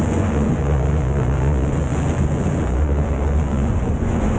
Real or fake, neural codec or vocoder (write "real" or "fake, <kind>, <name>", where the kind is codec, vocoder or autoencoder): fake, vocoder, Vocos